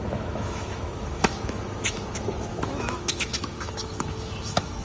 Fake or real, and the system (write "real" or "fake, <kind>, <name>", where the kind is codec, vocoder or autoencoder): fake, autoencoder, DAC-VAE